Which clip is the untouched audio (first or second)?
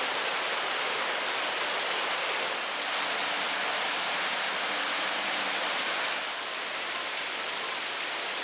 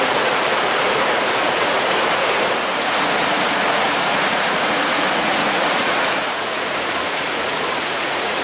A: first